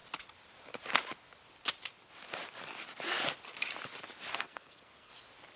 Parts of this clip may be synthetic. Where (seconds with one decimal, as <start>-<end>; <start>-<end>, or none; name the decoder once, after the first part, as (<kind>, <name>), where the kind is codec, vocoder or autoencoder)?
4.3-5.1 (codec, SNAC)